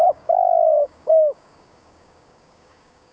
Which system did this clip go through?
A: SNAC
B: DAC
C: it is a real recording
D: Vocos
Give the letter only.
B